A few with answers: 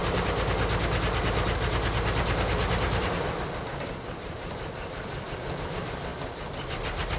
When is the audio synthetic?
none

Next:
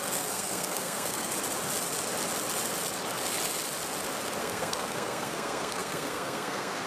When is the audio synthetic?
0.0-1.3; 4.4-6.9

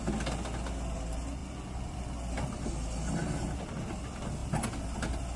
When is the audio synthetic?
none

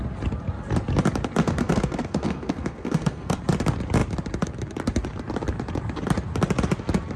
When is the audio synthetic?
1.4-3.4